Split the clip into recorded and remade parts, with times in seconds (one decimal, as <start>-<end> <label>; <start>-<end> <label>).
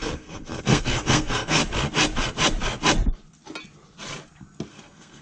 0.0-1.6 remade; 1.6-4.7 recorded; 4.7-5.2 remade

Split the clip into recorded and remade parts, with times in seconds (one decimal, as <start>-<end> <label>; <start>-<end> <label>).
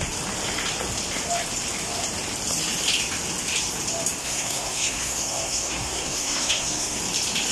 0.0-4.2 recorded; 4.2-7.0 remade; 7.0-7.5 recorded